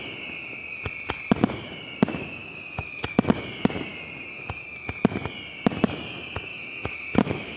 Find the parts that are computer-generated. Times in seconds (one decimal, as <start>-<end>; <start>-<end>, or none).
6.5-7.6